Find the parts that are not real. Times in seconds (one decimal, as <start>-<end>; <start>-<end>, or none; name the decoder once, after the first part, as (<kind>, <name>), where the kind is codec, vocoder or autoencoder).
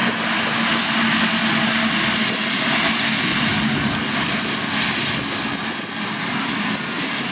none